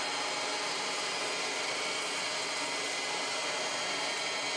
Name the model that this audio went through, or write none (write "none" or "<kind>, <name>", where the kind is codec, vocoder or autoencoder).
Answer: none